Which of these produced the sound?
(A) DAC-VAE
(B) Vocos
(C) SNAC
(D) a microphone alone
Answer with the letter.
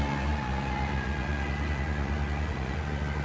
B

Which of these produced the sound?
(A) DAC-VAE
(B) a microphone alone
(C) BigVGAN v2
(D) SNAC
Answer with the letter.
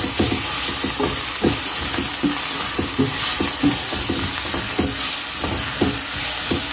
B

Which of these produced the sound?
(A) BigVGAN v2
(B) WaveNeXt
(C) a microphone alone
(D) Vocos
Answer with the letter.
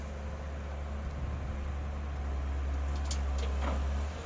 C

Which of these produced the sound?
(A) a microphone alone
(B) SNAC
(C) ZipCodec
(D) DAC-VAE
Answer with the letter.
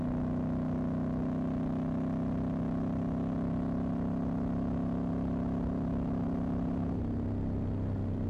A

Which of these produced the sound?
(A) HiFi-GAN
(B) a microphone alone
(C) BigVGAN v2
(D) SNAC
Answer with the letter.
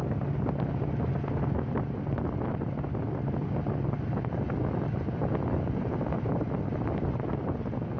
B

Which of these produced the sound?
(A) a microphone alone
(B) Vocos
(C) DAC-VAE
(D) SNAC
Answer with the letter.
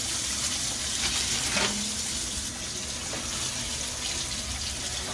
A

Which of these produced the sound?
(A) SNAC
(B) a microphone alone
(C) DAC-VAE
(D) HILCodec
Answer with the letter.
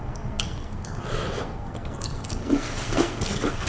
A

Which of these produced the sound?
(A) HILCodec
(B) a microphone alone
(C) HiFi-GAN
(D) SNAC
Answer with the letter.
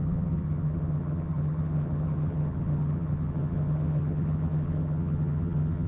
C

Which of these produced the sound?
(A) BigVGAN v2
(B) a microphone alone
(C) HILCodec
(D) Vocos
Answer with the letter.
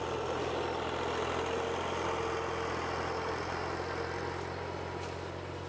B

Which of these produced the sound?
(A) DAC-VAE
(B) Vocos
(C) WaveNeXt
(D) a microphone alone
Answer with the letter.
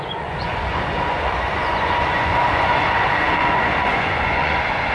B